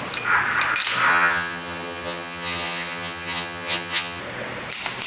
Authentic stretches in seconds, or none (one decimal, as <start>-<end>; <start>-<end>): 0.0-1.1; 4.2-5.1